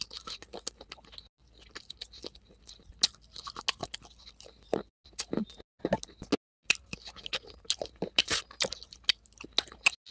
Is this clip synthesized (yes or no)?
no